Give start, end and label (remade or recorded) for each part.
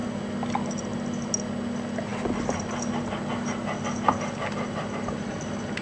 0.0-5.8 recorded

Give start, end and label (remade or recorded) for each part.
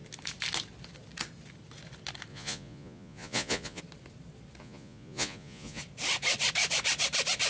0.0-2.3 recorded; 2.3-3.8 remade; 3.8-4.6 recorded; 4.6-5.8 remade; 5.8-7.5 recorded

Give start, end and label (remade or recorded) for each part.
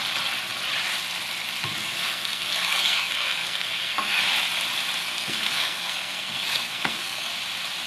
0.0-1.8 recorded; 1.8-4.2 remade; 4.2-5.0 recorded; 5.0-7.3 remade; 7.3-7.9 recorded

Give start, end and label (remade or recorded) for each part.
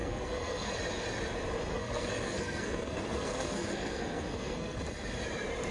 0.0-0.7 remade; 0.7-1.7 recorded; 1.7-4.8 remade; 4.8-5.7 recorded